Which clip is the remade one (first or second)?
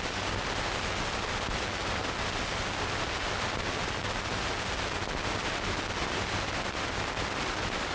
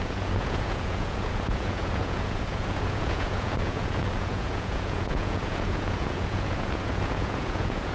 second